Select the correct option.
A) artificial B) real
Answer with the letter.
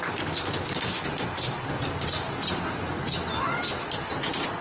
B